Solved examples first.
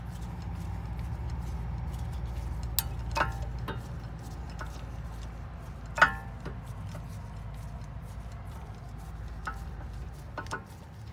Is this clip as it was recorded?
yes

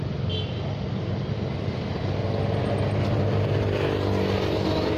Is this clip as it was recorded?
yes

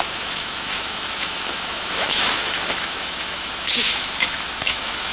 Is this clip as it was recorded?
no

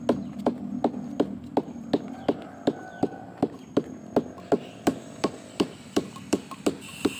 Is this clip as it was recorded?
yes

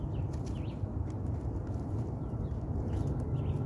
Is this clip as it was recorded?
yes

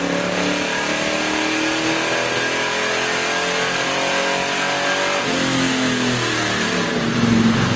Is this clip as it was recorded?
yes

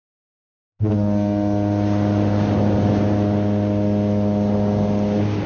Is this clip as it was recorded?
yes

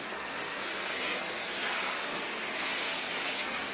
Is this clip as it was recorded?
no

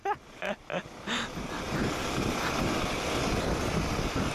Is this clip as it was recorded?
yes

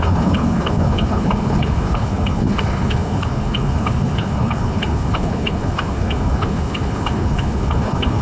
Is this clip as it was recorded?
no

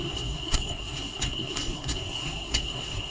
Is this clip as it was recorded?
no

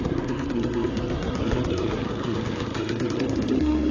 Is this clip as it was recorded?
no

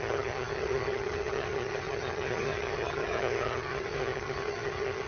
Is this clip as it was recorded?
no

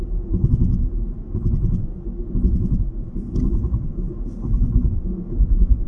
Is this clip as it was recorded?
yes